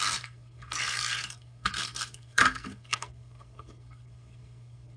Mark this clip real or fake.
fake